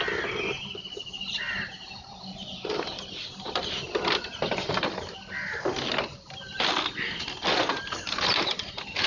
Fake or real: real